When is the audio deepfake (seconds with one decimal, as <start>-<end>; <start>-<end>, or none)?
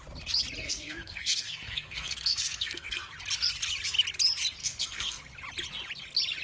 0.6-3.1; 4.6-5.2